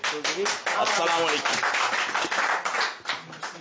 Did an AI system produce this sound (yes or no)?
no